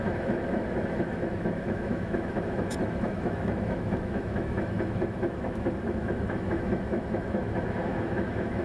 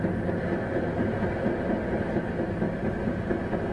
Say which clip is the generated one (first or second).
first